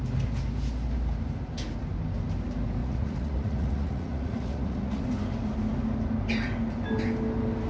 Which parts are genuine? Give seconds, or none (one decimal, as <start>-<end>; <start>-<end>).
0.0-2.8; 5.0-7.7